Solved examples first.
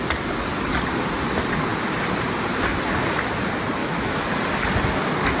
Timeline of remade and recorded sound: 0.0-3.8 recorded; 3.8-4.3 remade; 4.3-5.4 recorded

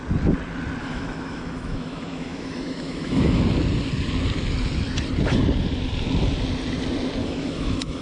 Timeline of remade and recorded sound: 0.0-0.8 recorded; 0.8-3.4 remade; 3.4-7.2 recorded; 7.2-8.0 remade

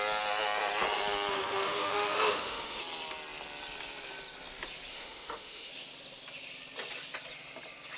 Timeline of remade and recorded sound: 0.0-1.3 recorded; 1.3-2.8 remade; 2.8-4.9 recorded; 4.9-5.7 remade; 5.7-8.0 recorded

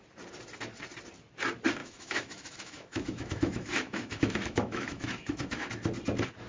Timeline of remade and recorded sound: 0.0-1.8 recorded; 1.8-5.7 remade; 5.7-6.5 recorded

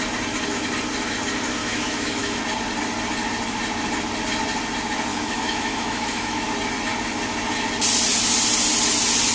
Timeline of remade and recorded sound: 0.0-1.6 recorded; 1.6-2.4 remade; 2.4-5.1 recorded; 5.1-6.4 remade; 6.4-9.3 recorded

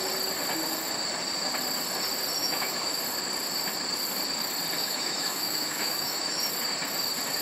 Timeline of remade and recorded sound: 0.0-2.4 recorded; 2.4-3.0 remade; 3.0-4.8 recorded; 4.8-6.4 remade; 6.4-7.4 recorded

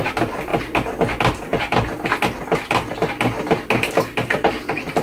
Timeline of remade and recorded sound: 0.0-5.0 recorded